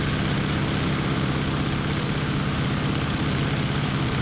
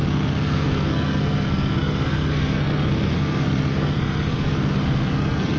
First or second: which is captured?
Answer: first